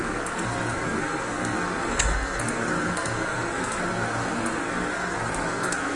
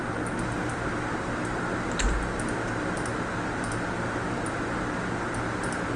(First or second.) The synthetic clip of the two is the first